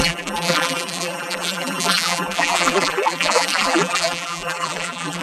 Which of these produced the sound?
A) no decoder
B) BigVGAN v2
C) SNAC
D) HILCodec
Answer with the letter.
B